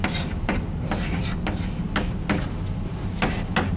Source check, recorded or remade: recorded